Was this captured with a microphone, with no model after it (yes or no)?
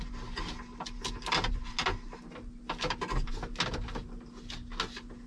yes